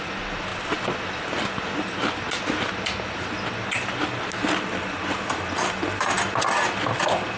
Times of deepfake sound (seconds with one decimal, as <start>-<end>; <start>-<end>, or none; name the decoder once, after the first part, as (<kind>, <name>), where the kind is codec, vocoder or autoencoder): none